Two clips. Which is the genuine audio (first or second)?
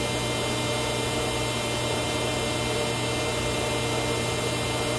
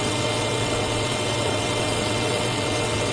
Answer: first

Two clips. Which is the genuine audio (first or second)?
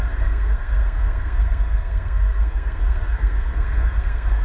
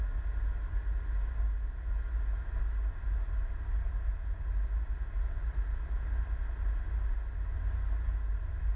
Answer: second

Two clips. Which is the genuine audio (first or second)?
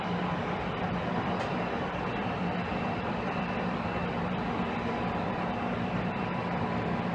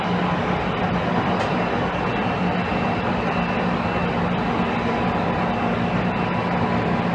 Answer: second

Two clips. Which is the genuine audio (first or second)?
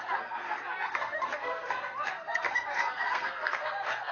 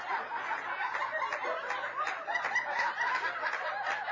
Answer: second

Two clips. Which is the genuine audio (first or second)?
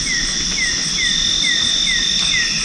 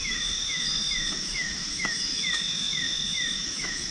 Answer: first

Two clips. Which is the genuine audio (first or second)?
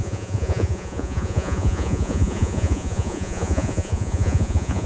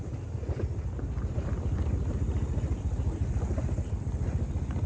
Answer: second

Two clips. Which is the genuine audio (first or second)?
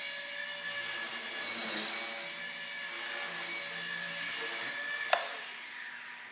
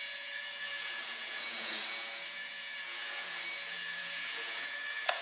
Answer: first